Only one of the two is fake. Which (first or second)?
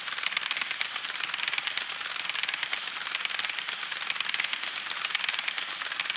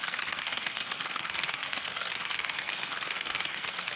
second